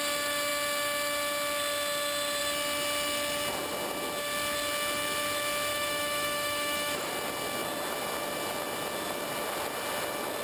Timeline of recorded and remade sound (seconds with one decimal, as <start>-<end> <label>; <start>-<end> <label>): 0.0-5.7 recorded; 5.7-7.1 remade; 7.1-10.4 recorded